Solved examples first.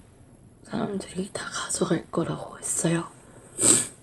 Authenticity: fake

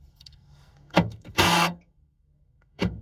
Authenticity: fake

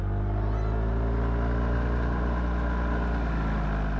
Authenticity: real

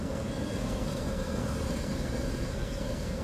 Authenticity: fake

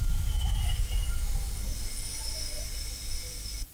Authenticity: fake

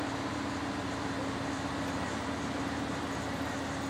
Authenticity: real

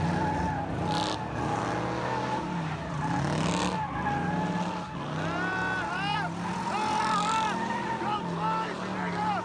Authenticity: real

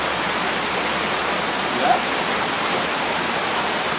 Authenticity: real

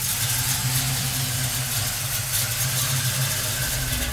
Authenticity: real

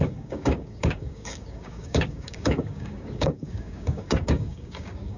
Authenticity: fake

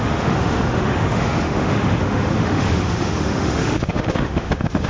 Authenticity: fake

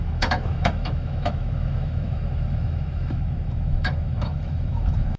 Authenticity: fake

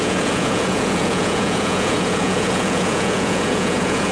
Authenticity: fake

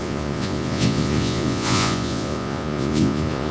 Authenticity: fake